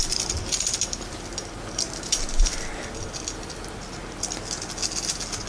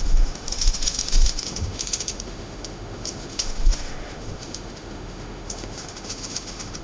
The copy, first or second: second